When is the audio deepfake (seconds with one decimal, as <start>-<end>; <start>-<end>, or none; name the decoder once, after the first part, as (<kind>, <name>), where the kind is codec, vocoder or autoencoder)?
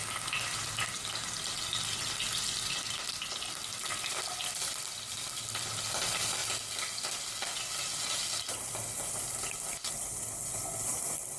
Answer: none